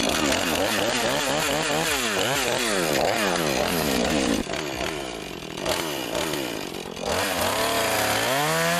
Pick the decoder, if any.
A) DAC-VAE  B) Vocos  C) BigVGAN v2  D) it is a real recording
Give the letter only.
D